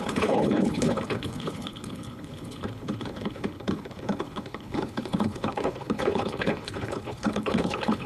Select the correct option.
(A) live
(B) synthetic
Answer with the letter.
B